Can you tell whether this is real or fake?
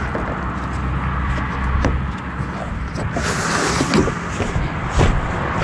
real